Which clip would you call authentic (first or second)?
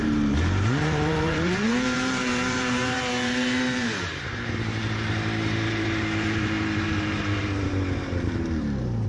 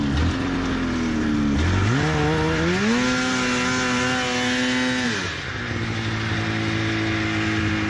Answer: second